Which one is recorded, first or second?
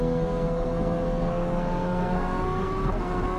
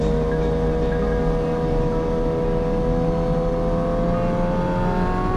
second